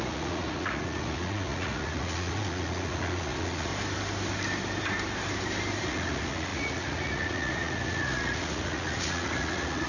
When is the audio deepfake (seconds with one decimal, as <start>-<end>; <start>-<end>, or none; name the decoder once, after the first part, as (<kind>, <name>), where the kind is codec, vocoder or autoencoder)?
0.0-3.7 (vocoder, Vocos); 5.8-9.9